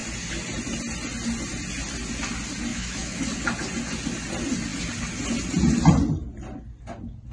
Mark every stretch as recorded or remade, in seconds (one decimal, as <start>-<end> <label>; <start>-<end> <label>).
0.0-2.7 recorded; 2.7-3.2 remade; 3.2-7.3 recorded